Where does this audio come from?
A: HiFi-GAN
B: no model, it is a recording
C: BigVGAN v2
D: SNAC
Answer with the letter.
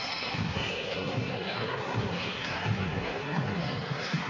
D